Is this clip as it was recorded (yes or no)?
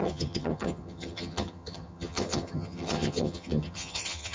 no